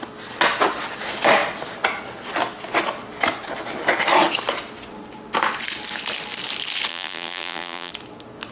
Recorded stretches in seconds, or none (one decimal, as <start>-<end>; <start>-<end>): 0.0-6.9; 7.9-8.5